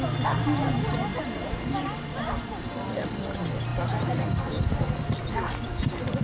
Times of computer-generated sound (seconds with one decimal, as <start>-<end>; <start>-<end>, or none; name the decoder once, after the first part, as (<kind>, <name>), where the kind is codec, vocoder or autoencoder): 1.1-2.7 (vocoder, BigVGAN v2); 3.7-4.8